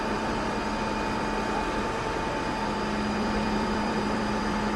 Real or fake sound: fake